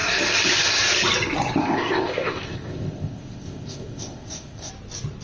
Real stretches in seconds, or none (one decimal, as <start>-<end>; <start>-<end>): 0.0-1.6; 4.7-5.2